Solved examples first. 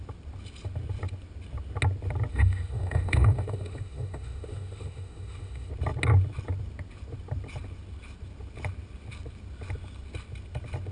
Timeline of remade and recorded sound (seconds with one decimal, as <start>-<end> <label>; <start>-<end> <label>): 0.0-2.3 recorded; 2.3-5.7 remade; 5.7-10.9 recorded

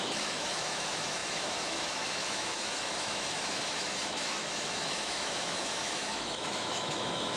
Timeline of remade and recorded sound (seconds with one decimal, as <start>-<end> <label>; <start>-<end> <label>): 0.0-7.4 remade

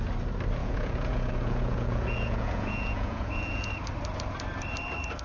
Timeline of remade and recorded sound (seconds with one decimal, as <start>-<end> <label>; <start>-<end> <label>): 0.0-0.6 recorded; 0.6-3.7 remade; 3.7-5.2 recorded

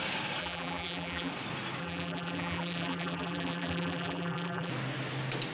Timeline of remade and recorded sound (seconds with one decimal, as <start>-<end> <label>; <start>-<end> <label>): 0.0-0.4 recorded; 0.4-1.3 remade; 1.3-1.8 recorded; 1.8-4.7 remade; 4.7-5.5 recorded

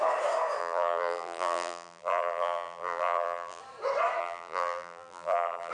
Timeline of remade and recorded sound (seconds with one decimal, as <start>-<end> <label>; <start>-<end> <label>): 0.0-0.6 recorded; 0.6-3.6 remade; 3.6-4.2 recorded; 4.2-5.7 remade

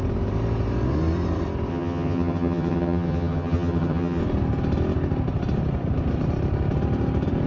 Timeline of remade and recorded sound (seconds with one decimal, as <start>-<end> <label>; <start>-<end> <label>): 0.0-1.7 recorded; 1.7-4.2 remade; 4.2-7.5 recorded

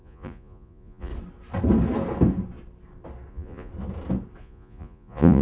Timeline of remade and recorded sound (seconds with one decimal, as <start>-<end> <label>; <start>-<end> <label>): 0.0-1.1 remade; 1.1-3.3 recorded; 3.3-3.7 remade; 3.7-4.4 recorded; 4.4-5.4 remade